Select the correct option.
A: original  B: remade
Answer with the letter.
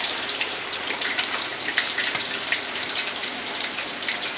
B